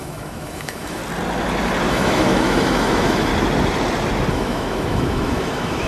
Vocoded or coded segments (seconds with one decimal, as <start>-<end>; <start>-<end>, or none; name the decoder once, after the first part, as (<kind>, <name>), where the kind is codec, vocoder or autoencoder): 0.0-1.0 (autoencoder, DAC-VAE); 1.9-3.3; 4.3-5.9